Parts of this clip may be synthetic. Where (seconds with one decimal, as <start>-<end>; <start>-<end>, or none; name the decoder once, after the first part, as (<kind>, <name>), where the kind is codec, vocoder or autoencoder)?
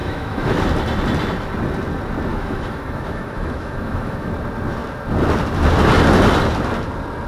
0.0-0.6 (autoencoder, DAC-VAE); 2.3-4.3